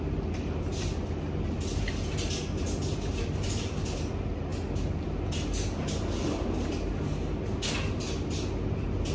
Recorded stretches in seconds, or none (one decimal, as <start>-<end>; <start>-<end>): 0.0-9.1